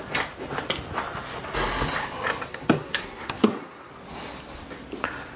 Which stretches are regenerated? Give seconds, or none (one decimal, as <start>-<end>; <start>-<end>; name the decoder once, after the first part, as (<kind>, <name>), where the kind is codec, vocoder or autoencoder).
2.5-3.9 (codec, SNAC)